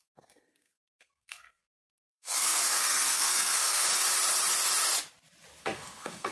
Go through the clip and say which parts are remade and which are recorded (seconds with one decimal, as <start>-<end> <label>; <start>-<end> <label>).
0.0-3.9 remade; 3.9-5.6 recorded; 5.6-6.3 remade